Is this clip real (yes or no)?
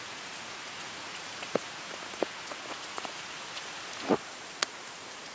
no